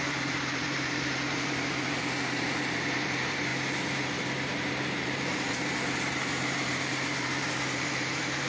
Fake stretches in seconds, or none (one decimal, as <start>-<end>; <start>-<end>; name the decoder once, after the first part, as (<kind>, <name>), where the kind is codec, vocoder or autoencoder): 0.0-8.5 (vocoder, BigVGAN v2)